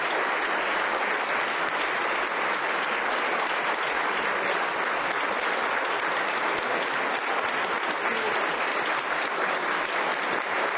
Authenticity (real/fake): real